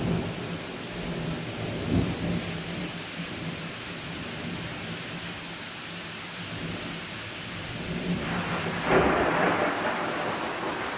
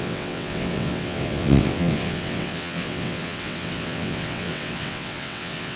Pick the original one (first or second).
first